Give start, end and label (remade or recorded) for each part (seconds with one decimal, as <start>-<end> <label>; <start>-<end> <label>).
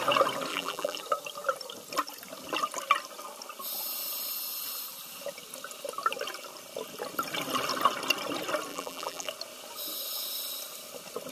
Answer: 0.0-0.5 recorded; 0.5-1.0 remade; 1.0-8.7 recorded; 8.7-9.3 remade; 9.3-11.3 recorded